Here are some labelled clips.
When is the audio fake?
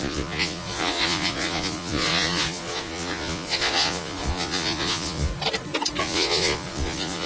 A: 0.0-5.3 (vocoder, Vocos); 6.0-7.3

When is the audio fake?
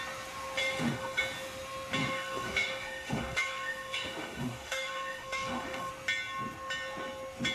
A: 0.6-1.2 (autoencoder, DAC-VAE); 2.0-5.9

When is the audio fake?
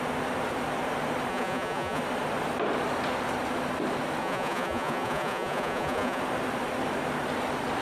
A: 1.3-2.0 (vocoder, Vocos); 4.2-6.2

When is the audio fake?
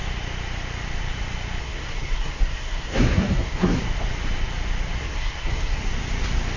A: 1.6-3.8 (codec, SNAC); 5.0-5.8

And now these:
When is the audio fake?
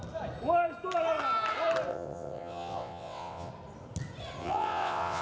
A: 1.9-3.5 (vocoder, WaveNeXt); 4.4-5.2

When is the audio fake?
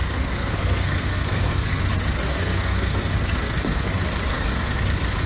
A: 0.0-1.8 (codec, SNAC); 2.3-3.9; 4.3-4.8